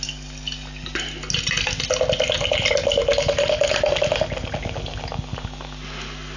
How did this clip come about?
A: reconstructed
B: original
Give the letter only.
B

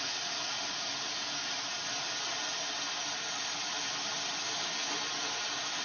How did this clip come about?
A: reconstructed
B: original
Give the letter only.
B